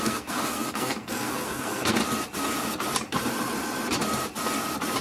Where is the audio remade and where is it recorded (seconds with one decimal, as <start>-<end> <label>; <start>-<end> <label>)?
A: 0.0-2.0 remade; 2.0-5.0 recorded